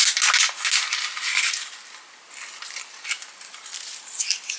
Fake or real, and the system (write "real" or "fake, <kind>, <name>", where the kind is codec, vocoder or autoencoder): real